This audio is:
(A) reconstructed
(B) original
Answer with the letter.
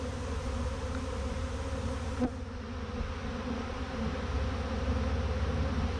B